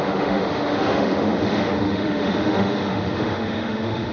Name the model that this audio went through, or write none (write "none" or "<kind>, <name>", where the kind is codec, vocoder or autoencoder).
autoencoder, DAC-VAE